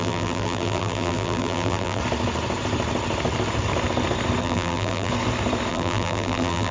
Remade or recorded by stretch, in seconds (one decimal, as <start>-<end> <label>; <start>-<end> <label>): 0.0-2.0 remade; 2.0-4.4 recorded; 4.4-5.1 remade; 5.1-5.7 recorded; 5.7-6.7 remade